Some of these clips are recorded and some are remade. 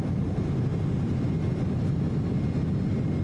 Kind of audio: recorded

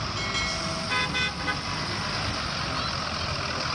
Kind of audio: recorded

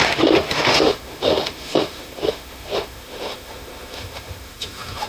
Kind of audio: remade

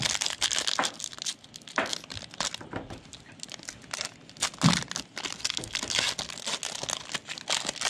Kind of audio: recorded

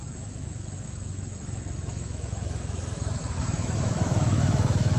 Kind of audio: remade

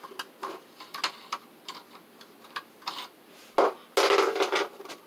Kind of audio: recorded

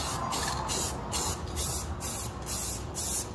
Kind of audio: recorded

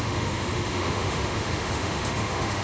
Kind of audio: remade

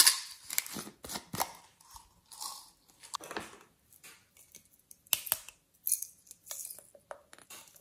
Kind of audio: recorded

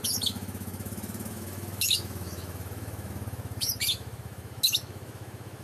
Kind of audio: remade